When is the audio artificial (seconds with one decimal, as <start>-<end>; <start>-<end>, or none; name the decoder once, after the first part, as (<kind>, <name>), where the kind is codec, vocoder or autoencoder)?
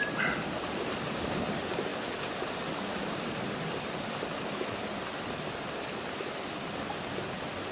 none